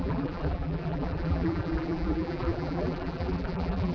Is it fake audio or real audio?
fake